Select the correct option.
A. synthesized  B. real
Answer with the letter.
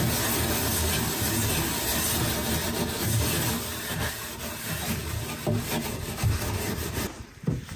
B